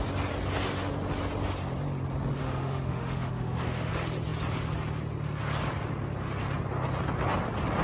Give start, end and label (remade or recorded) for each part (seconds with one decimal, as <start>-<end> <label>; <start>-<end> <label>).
0.0-2.4 recorded; 2.4-3.9 remade; 3.9-7.8 recorded